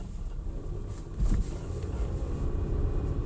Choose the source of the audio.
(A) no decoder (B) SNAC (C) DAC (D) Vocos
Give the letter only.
A